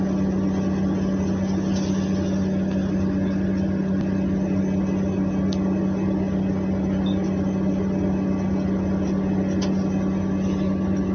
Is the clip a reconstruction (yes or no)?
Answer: no